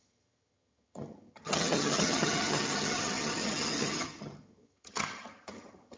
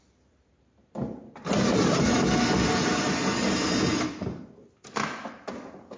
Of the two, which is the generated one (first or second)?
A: first